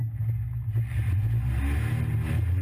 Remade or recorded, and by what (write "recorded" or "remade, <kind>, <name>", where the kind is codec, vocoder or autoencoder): recorded